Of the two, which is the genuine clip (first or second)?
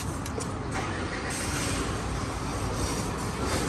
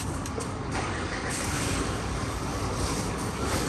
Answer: first